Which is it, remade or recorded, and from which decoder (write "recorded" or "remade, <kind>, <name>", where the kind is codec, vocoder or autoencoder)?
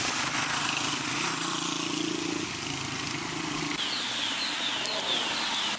recorded